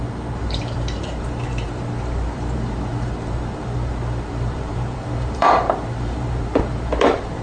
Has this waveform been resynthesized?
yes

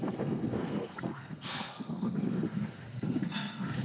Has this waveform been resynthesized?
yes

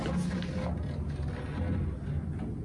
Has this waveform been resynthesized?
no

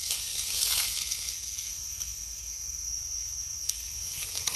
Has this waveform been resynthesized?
yes